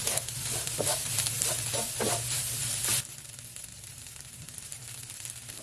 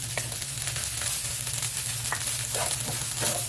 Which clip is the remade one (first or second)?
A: first